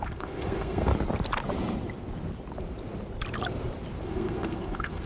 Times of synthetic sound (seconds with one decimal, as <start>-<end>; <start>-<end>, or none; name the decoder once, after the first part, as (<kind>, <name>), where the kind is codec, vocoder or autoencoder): 0.0-0.9 (codec, SNAC); 4.0-5.1